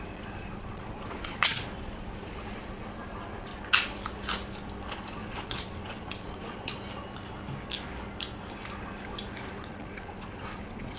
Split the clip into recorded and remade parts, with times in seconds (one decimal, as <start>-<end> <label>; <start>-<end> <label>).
0.0-3.5 remade; 3.5-5.0 recorded; 5.0-6.7 remade; 6.7-9.5 recorded; 9.5-11.0 remade